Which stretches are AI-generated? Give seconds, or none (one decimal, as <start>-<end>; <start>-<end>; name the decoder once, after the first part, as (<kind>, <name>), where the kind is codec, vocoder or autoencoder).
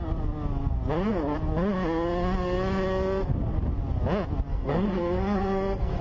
4.5-6.0 (codec, SNAC)